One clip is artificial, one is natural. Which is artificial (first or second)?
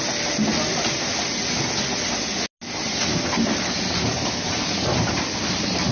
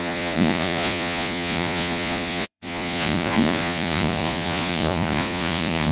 second